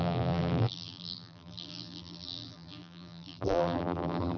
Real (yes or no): no